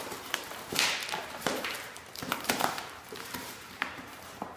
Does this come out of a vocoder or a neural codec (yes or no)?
yes